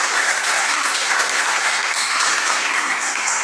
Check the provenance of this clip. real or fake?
fake